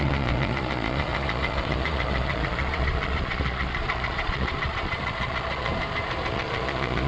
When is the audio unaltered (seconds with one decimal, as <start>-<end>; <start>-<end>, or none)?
5.7-6.3